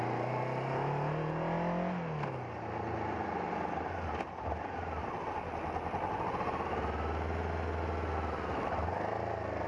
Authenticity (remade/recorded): recorded